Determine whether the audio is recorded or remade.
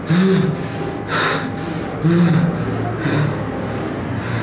recorded